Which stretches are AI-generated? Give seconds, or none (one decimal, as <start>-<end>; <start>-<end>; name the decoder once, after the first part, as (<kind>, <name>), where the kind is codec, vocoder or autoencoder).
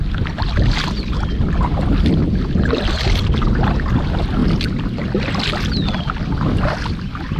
none